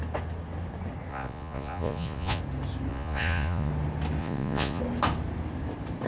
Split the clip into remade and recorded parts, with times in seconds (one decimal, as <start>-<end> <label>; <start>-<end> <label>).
0.0-1.1 recorded; 1.1-2.4 remade; 2.4-2.9 recorded; 2.9-3.7 remade; 3.7-4.2 recorded; 4.2-4.8 remade; 4.8-6.1 recorded